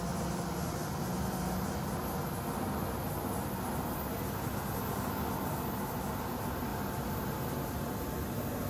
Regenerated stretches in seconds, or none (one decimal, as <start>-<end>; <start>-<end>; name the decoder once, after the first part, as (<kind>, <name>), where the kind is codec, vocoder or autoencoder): none